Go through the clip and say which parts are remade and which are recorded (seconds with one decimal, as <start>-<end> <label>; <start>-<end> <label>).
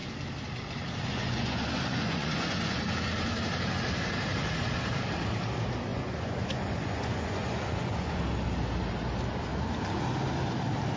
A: 0.0-1.1 recorded; 1.1-2.8 remade; 2.8-5.9 recorded; 5.9-8.2 remade; 8.2-11.0 recorded